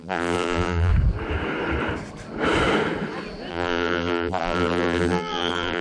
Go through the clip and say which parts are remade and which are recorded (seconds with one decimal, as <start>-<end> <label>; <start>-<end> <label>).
0.0-0.9 remade; 0.9-3.5 recorded; 3.5-5.8 remade